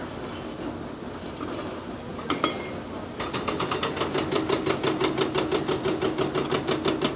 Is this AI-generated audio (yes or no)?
no